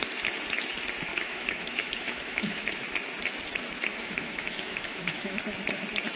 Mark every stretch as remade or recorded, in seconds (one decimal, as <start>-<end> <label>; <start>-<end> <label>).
0.0-1.1 recorded; 1.1-2.8 remade; 2.8-3.9 recorded; 3.9-5.4 remade; 5.4-6.2 recorded